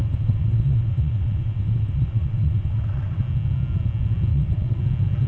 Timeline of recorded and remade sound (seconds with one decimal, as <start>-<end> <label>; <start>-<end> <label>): 0.0-3.2 remade; 3.2-4.3 recorded; 4.3-4.8 remade; 4.8-5.3 recorded